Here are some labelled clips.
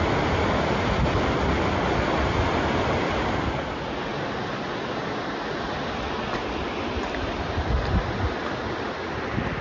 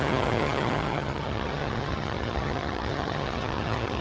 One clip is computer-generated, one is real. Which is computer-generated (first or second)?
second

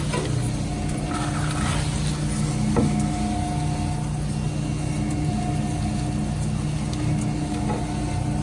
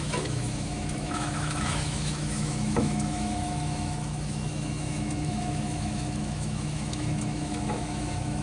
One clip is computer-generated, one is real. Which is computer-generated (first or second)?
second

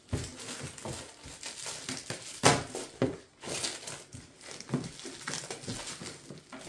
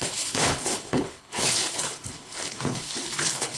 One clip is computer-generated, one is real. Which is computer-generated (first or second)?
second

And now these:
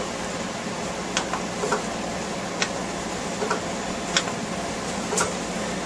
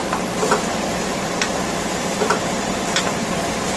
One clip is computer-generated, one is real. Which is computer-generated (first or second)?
second